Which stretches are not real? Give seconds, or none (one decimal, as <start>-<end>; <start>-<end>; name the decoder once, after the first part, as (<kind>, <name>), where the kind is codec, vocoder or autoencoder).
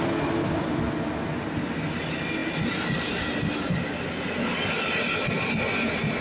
none